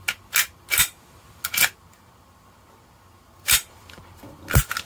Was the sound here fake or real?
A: real